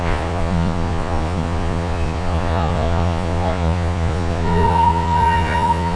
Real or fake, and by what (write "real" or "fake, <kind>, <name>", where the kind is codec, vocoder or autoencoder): fake, vocoder, Vocos